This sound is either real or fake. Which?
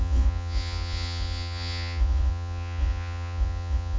fake